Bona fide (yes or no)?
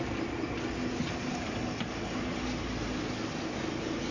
yes